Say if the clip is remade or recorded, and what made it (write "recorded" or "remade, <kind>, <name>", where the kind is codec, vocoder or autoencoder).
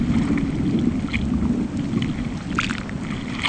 recorded